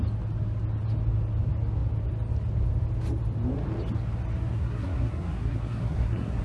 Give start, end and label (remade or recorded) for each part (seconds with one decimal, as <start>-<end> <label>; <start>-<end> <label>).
0.0-4.5 recorded; 4.5-6.4 remade